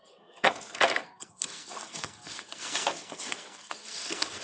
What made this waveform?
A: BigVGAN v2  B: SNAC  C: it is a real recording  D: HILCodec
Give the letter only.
B